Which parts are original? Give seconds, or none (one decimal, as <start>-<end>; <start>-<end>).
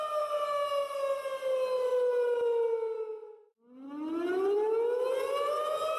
0.0-6.0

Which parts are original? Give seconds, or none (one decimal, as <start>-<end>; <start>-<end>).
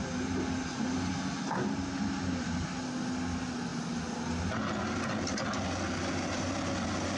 0.0-7.2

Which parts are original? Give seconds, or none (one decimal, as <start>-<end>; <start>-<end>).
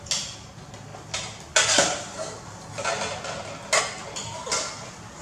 0.0-5.2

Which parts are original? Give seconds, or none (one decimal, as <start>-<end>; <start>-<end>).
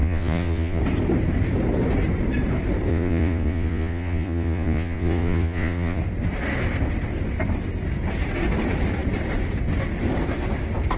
0.8-2.9; 6.0-11.0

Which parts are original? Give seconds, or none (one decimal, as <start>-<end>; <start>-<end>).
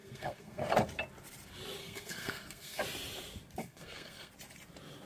0.6-1.8; 2.8-3.6; 4.3-5.1